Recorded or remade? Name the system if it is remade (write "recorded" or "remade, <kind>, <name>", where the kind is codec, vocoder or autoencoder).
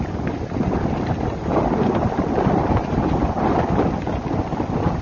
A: recorded